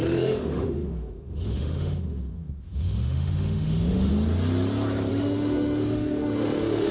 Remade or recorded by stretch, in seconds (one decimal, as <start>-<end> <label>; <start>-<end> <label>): 0.0-4.1 remade; 4.1-5.1 recorded; 5.1-6.9 remade